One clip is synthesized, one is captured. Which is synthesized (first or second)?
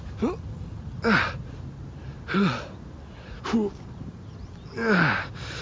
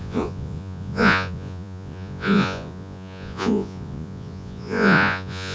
second